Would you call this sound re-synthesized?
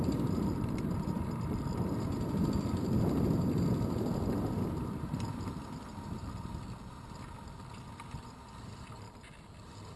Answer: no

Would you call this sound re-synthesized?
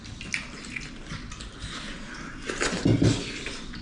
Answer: no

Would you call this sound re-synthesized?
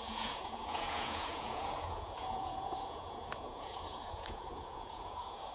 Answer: yes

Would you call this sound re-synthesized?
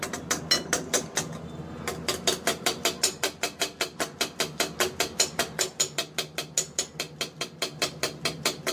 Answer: no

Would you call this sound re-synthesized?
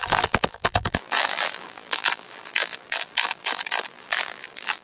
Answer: yes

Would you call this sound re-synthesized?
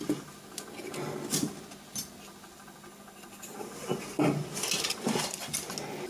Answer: no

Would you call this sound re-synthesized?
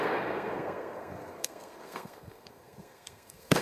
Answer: yes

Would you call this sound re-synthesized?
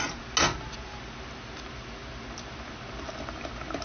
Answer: no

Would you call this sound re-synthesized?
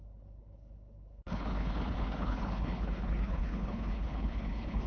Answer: yes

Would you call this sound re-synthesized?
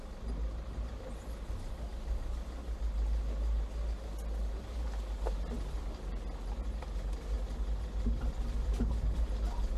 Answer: no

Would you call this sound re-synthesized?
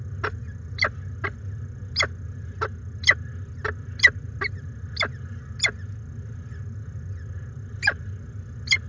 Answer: no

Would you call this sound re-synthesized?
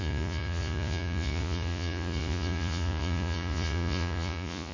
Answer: yes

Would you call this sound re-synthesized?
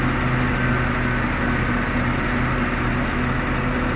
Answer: no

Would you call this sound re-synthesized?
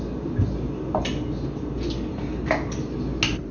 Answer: no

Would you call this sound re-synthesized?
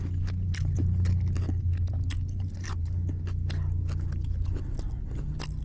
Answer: no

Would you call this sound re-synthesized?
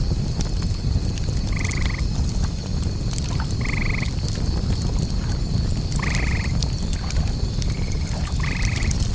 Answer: no